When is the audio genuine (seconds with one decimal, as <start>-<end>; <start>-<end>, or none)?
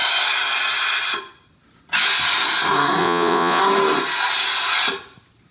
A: 0.0-3.0; 3.6-5.5